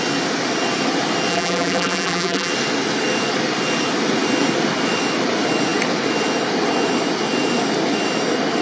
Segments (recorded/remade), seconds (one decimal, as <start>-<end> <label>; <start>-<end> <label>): 0.0-1.3 recorded; 1.3-2.5 remade; 2.5-8.6 recorded